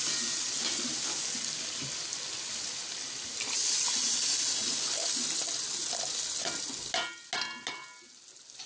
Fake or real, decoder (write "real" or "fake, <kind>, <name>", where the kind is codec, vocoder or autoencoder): real